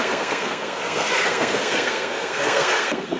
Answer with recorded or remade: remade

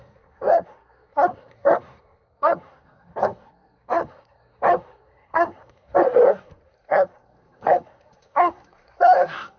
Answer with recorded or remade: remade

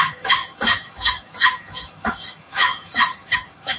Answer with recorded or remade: remade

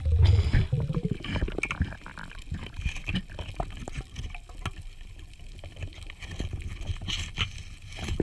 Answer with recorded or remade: recorded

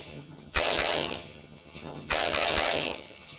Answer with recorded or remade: remade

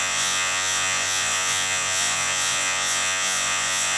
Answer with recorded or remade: remade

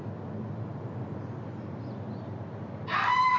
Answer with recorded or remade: recorded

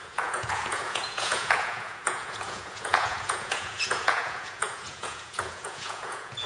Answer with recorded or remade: remade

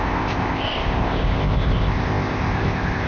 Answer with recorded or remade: remade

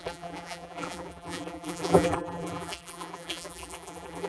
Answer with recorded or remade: remade